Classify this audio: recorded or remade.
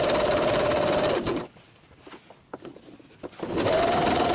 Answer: recorded